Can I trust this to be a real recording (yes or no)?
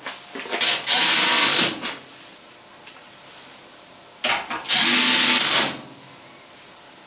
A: yes